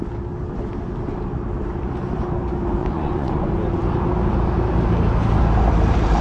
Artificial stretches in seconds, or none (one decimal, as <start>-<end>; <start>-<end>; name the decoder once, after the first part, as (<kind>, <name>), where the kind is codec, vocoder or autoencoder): 2.8-3.5 (vocoder, Vocos)